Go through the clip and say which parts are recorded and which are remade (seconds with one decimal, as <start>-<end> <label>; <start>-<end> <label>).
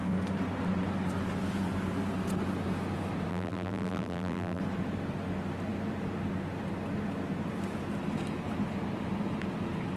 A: 0.0-3.3 recorded; 3.3-4.6 remade; 4.6-10.0 recorded